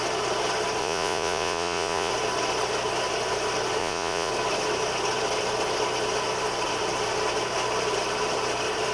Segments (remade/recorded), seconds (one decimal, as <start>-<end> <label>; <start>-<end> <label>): 0.0-0.8 recorded; 0.8-2.1 remade; 2.1-3.8 recorded; 3.8-4.3 remade; 4.3-8.9 recorded